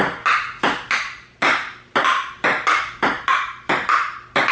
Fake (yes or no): no